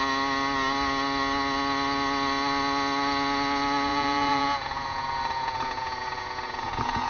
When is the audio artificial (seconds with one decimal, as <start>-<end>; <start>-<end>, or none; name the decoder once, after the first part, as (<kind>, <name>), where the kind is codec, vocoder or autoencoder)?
3.9-7.1 (vocoder, Vocos)